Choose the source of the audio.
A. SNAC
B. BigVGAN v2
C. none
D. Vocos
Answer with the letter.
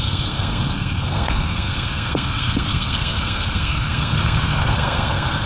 A